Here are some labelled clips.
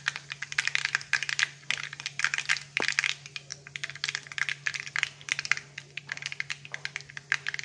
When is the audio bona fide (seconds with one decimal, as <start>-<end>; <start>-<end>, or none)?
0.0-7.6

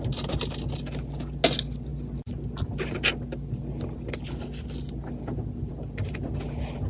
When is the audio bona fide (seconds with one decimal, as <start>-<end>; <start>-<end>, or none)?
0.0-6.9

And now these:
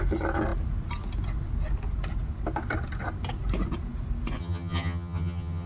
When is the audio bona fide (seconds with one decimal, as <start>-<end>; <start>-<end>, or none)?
0.0-4.4

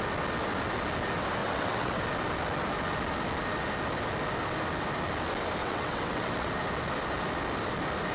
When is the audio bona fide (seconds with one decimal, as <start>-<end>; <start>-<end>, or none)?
0.0-1.4; 2.0-5.6; 6.5-8.1